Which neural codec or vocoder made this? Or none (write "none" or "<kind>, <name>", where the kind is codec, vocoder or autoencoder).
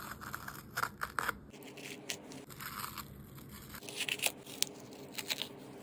none